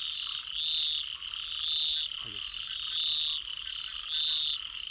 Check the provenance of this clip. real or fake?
real